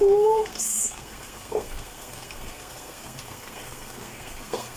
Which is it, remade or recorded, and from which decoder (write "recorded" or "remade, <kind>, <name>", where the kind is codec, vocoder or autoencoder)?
remade, codec, SNAC